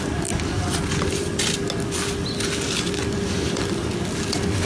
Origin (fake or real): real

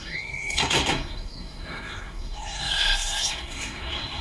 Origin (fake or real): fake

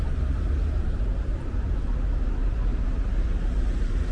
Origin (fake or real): real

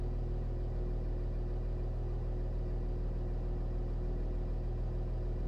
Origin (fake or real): real